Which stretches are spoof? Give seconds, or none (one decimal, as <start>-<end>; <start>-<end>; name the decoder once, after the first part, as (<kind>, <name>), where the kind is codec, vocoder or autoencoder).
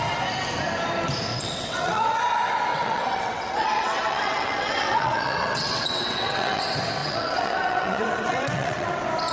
1.3-2.2 (vocoder, WaveNeXt); 2.7-6.6; 7.0-8.9